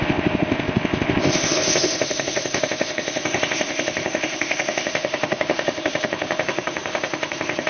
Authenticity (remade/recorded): remade